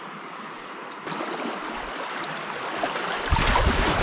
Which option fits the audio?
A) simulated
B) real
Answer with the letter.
A